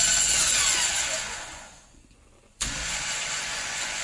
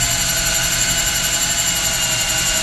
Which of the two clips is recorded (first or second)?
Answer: second